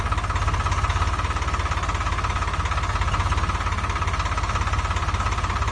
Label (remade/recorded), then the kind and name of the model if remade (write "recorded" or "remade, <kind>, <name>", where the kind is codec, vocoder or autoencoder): recorded